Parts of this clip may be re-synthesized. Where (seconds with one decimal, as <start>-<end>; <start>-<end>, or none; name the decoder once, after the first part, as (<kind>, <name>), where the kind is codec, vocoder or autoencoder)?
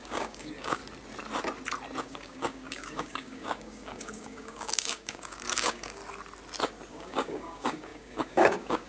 0.0-0.8 (codec, DAC); 2.0-6.0; 6.9-8.9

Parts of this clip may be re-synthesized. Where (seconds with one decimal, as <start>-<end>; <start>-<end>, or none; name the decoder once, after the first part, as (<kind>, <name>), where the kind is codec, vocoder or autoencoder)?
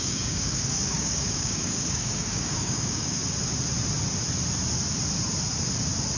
0.0-3.2 (codec, DAC)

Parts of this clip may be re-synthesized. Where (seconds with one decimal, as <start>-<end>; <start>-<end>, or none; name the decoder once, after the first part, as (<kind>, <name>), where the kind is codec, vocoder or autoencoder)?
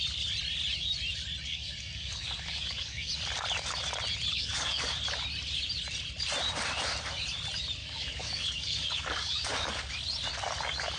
1.5-3.1 (codec, DAC); 4.3-4.9; 7.8-9.9